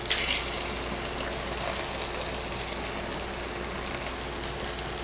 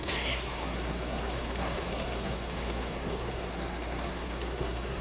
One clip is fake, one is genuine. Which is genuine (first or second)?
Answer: first